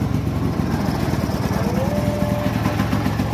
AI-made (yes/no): no